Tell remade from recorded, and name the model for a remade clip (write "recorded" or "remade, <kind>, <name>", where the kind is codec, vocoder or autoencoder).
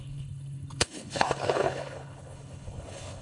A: remade, codec, HILCodec